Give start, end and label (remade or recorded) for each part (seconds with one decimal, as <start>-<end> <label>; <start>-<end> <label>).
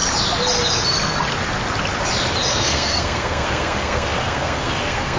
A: 0.0-2.5 recorded; 2.5-5.2 remade